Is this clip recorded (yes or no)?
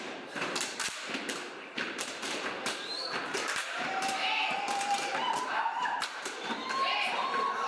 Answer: no